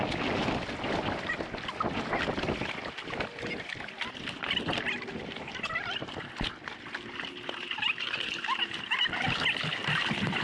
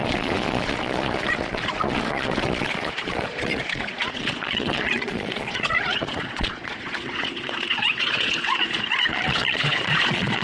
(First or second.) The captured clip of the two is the first